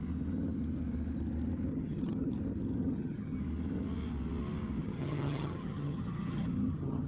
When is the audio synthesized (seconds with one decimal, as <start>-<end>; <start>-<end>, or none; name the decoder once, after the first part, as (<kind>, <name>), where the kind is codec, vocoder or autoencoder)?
1.7-2.3 (vocoder, HiFi-GAN); 2.8-3.4; 4.8-7.1